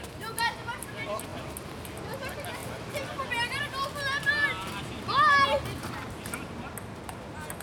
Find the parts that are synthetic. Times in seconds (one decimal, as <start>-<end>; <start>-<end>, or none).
none